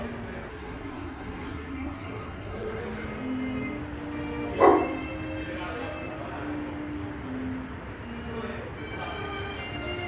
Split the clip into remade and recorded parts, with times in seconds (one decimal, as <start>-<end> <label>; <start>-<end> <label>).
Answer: 0.0-0.5 recorded; 0.5-2.8 remade; 2.8-10.1 recorded